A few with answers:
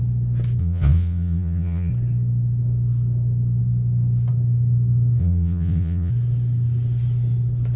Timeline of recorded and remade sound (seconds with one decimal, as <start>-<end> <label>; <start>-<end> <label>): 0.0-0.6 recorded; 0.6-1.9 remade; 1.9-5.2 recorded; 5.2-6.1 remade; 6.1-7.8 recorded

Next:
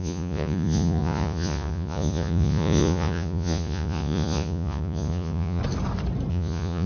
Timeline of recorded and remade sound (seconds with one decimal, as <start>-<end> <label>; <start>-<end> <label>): 0.0-5.6 remade; 5.6-6.3 recorded; 6.3-6.9 remade

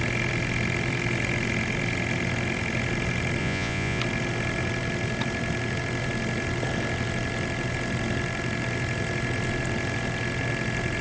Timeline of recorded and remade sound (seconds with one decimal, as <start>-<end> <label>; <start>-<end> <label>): 0.0-3.4 recorded; 3.4-4.0 remade; 4.0-11.0 recorded

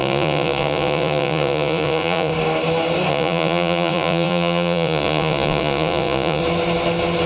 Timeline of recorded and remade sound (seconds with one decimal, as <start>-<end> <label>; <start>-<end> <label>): 0.0-2.3 remade; 2.3-3.1 recorded; 3.1-6.4 remade; 6.4-7.3 recorded

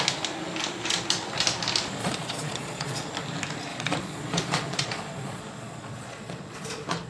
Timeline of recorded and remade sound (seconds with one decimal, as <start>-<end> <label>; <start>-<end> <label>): 0.0-2.0 recorded; 2.0-3.1 remade; 3.1-3.7 recorded; 3.7-7.1 remade

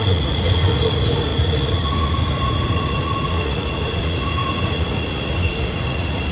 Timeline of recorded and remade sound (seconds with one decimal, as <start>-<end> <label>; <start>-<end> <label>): 0.0-6.3 remade